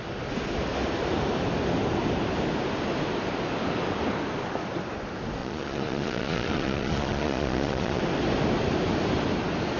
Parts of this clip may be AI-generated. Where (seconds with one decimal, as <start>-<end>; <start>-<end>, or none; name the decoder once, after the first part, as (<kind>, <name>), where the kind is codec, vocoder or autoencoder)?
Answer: 5.4-8.0 (vocoder, Vocos)